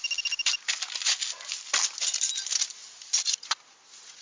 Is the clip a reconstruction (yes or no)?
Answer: no